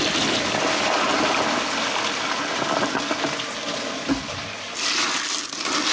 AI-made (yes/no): no